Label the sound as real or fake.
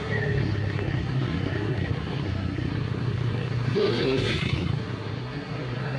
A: fake